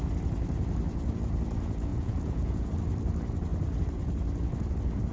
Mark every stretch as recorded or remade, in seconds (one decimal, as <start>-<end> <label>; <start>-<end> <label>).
0.0-1.9 recorded; 1.9-2.7 remade; 2.7-5.1 recorded